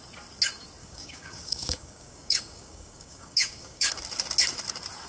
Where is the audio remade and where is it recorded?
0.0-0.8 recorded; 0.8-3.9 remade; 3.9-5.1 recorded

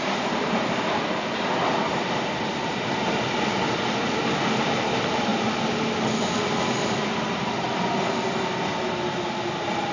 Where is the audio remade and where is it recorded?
0.0-9.9 recorded

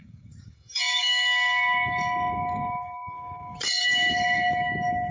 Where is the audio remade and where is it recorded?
0.0-5.1 remade

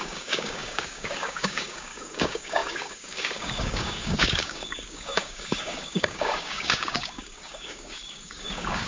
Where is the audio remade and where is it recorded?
0.0-8.9 remade

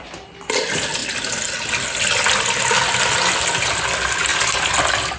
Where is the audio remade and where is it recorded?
0.0-5.2 recorded

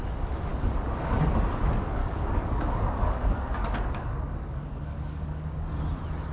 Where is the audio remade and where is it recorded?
0.0-0.5 recorded; 0.5-1.2 remade; 1.2-2.0 recorded; 2.0-5.8 remade; 5.8-6.3 recorded